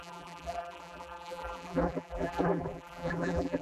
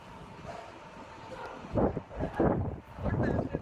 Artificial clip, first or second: first